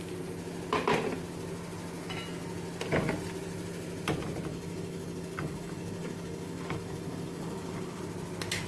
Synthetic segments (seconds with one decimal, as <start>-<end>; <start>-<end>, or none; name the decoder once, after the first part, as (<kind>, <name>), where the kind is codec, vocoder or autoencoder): 4.5-8.0 (codec, DAC)